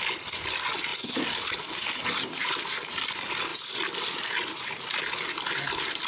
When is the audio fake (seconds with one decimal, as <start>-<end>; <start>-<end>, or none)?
none